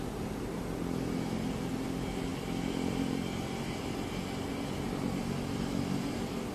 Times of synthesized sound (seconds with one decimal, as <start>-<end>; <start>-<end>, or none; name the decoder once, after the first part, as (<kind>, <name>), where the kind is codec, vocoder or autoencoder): none